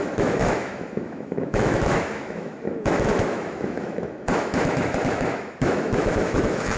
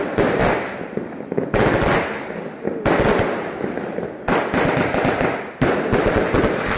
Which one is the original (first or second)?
second